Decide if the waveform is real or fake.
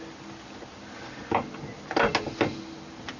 real